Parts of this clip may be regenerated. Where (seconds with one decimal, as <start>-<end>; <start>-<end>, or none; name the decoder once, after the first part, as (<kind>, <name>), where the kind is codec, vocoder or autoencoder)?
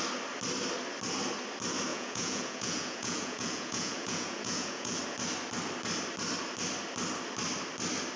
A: 1.9-5.0 (vocoder, Vocos)